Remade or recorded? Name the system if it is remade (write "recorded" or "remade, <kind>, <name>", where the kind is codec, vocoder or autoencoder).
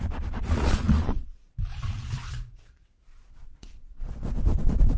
remade, vocoder, Vocos